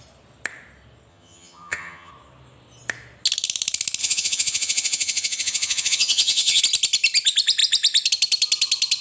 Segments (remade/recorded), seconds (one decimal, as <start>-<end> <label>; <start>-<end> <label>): 0.0-1.1 recorded; 1.1-2.1 remade; 2.1-4.0 recorded; 4.0-6.6 remade; 6.6-9.0 recorded